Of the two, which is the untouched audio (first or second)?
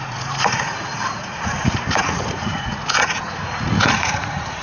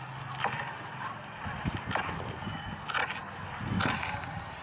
second